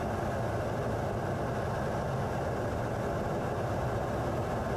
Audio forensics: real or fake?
real